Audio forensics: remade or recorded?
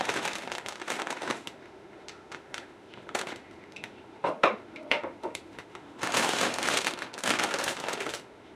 remade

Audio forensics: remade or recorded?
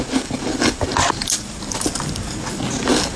recorded